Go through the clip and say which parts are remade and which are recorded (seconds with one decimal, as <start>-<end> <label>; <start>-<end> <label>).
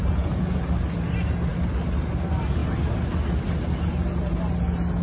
0.0-0.6 remade; 0.6-5.0 recorded